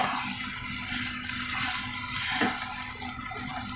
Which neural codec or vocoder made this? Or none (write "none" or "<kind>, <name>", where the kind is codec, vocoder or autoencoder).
none